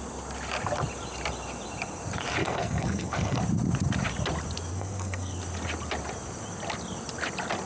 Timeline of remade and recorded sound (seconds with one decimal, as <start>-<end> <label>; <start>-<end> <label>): 0.0-2.4 recorded; 2.4-3.4 remade; 3.4-4.7 recorded; 4.7-5.4 remade; 5.4-7.7 recorded